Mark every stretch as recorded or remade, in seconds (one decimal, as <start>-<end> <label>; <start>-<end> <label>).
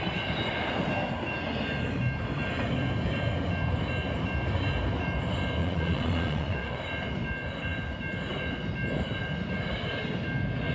0.0-5.6 recorded; 5.6-6.8 remade; 6.8-10.7 recorded